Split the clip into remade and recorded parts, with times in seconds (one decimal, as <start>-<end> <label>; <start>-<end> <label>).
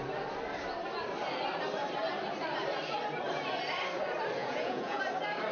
0.0-4.4 recorded; 4.4-5.0 remade; 5.0-5.5 recorded